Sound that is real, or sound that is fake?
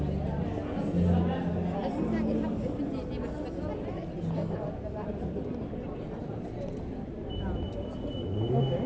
real